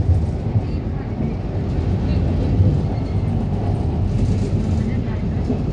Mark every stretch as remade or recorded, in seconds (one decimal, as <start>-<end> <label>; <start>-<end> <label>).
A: 0.0-5.7 recorded